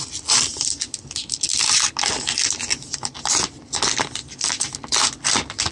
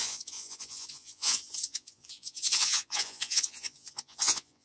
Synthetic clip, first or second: second